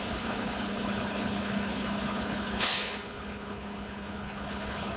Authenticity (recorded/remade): remade